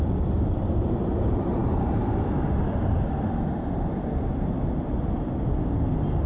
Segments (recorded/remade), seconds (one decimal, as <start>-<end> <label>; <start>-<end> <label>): 0.0-6.3 recorded